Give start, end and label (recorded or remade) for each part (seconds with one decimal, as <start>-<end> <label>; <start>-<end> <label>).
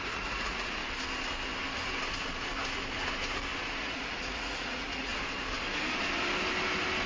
0.0-0.8 remade; 0.8-3.8 recorded; 3.8-5.1 remade; 5.1-7.1 recorded